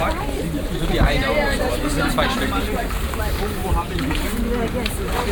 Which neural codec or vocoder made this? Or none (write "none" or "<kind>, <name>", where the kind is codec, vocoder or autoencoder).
vocoder, BigVGAN v2